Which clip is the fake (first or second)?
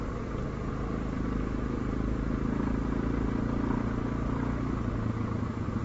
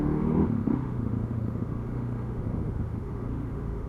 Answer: second